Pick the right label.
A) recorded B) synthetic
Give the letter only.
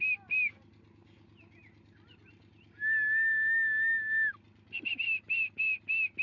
A